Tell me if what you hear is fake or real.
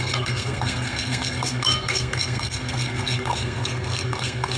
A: fake